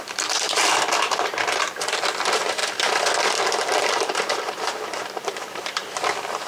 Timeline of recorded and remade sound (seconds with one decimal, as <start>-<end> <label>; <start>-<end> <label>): 0.0-2.6 remade; 2.6-3.9 recorded; 3.9-5.8 remade; 5.8-6.5 recorded